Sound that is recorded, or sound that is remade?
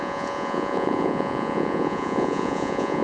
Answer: remade